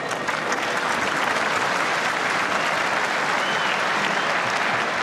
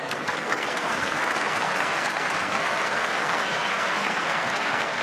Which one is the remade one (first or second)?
second